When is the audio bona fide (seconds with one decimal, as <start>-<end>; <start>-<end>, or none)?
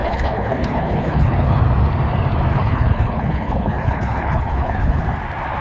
1.6-2.5; 5.0-5.6